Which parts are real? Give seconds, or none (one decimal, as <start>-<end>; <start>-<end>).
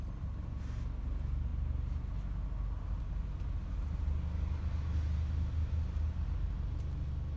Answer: 0.0-7.4